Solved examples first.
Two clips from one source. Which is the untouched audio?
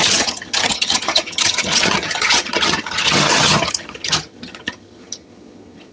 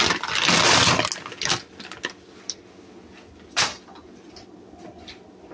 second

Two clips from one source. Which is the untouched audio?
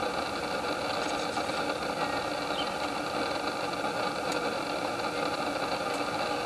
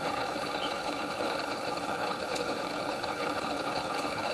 first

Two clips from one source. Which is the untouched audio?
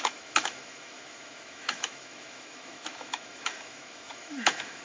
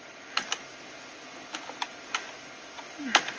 second